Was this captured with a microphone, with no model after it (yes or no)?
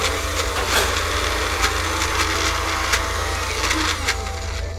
yes